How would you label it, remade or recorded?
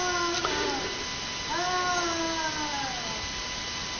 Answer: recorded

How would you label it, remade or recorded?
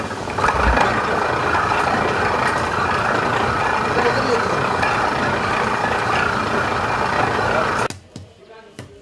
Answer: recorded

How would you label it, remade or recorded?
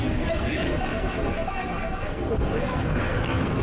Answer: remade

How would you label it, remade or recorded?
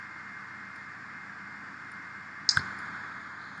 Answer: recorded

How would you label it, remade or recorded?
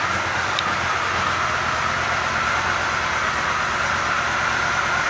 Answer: recorded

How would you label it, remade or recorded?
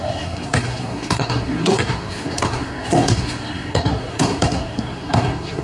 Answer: remade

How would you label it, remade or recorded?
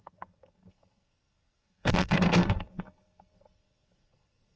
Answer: remade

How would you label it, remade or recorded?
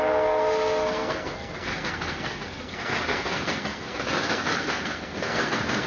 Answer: remade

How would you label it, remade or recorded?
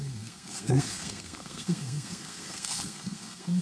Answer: remade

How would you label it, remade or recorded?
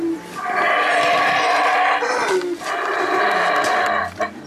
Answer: recorded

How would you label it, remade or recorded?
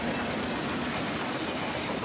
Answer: recorded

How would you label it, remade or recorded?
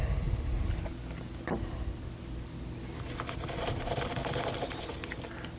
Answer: recorded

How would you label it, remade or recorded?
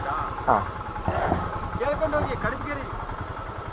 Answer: recorded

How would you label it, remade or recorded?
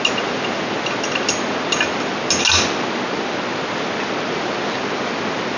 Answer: recorded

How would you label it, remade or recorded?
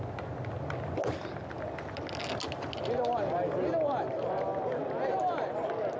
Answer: recorded